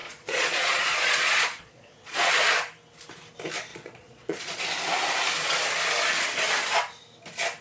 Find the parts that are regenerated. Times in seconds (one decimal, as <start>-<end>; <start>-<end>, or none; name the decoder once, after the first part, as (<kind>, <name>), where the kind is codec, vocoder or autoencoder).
0.0-2.3 (vocoder, Vocos); 3.7-4.6

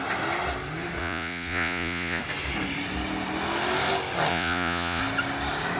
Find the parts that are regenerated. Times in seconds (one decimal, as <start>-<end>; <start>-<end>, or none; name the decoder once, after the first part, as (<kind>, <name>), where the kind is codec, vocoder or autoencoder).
1.0-2.2 (vocoder, Vocos); 4.3-5.0

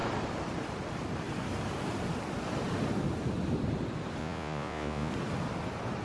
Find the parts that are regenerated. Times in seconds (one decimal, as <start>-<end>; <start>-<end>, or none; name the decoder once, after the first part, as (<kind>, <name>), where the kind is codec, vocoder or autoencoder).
4.2-5.1 (vocoder, Vocos)

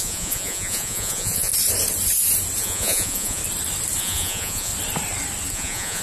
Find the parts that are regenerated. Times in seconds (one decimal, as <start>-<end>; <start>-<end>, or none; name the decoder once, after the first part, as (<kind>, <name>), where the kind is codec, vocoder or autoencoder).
0.0-1.5 (vocoder, Vocos); 2.6-3.4; 4.0-4.7; 5.5-6.0

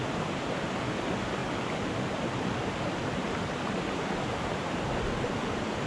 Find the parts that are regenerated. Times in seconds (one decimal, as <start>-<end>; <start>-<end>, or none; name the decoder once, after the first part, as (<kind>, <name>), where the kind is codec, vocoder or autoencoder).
none